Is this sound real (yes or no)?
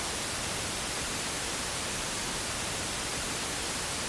yes